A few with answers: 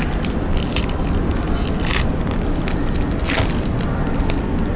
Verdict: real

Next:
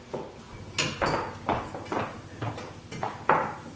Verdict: real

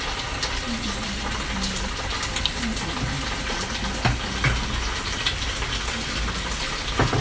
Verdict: real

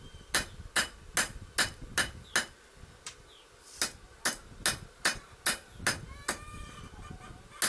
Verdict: real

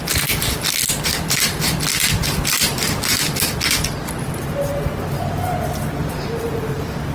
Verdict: real